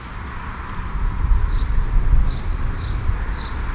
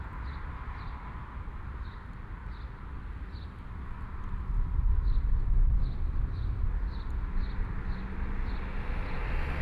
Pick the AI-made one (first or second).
first